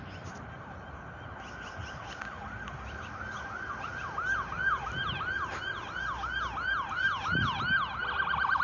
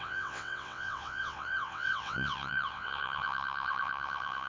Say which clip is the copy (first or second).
second